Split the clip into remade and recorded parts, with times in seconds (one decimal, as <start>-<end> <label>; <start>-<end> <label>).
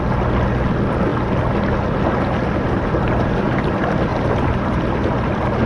0.0-4.1 recorded; 4.1-4.8 remade; 4.8-5.7 recorded